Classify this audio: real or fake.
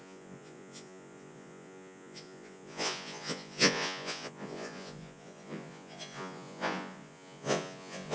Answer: fake